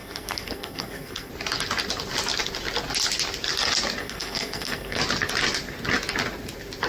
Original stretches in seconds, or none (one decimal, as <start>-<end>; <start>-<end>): 1.3-4.0; 5.0-6.9